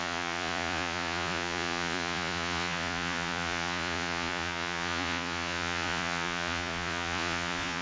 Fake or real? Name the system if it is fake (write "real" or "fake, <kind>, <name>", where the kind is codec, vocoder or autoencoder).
fake, vocoder, Vocos